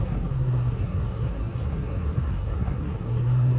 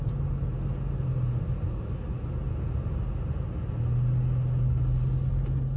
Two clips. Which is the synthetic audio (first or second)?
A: first